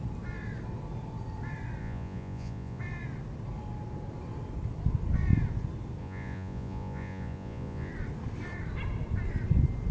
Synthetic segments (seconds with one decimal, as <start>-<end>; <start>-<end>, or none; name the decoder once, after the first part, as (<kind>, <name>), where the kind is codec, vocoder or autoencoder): 1.8-2.8 (vocoder, Vocos); 6.0-7.9